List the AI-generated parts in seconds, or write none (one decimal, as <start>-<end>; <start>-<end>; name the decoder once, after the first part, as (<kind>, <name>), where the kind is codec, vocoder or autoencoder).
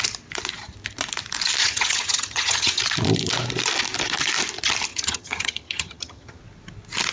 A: 1.6-2.8 (vocoder, HiFi-GAN); 4.9-6.4